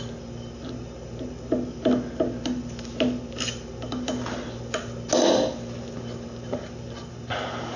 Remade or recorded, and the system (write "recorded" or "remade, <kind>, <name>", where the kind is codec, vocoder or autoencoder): recorded